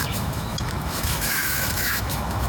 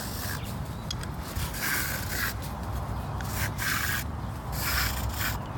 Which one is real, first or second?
second